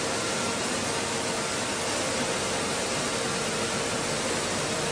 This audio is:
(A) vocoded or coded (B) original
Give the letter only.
B